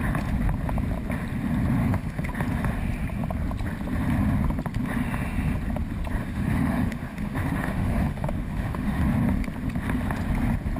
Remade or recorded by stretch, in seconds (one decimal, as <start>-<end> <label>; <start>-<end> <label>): 0.0-1.8 recorded; 1.8-2.3 remade; 2.3-6.2 recorded; 6.2-9.0 remade; 9.0-10.8 recorded